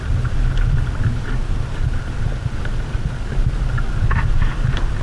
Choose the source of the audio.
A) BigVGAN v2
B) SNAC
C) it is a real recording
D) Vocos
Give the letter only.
C